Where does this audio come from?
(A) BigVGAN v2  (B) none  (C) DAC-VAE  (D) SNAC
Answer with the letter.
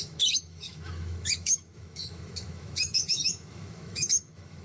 C